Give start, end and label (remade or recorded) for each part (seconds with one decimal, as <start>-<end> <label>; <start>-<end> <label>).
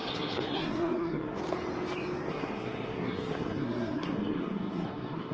0.0-1.4 remade; 1.4-2.3 recorded; 2.3-5.3 remade